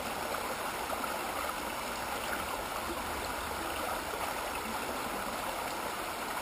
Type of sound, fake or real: real